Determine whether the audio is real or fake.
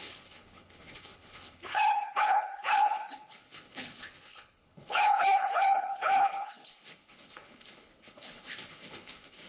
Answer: fake